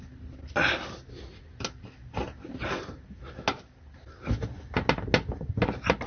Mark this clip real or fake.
real